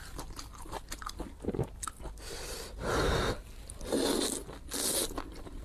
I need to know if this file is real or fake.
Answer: real